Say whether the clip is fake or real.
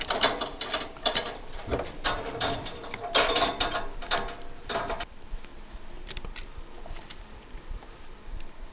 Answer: fake